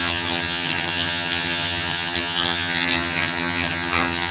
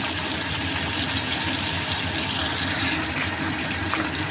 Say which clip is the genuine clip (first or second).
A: second